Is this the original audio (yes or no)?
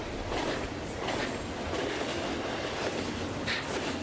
yes